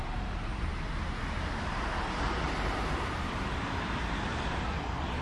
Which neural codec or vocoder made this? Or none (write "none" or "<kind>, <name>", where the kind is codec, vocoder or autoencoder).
vocoder, BigVGAN v2